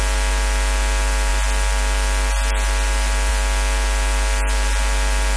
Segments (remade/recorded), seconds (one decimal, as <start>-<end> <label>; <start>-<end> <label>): 0.0-5.4 recorded